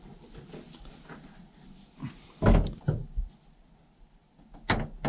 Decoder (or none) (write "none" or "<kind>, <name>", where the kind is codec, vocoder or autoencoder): none